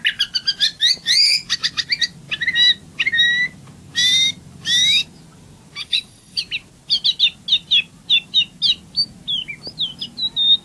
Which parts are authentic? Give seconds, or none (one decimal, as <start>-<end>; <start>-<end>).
0.0-5.8; 6.4-10.6